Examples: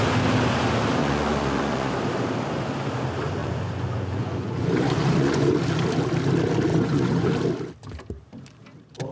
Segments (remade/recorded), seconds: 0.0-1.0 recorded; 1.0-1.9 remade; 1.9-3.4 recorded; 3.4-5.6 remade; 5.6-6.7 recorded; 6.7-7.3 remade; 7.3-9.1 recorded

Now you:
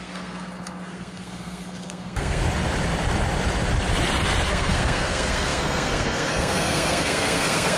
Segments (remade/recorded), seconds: 0.0-2.4 remade; 2.4-4.5 recorded; 4.5-7.8 remade